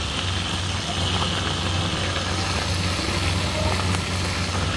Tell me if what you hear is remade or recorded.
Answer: recorded